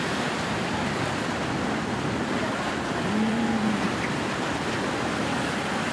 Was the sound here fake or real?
fake